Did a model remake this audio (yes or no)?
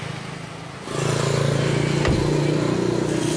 no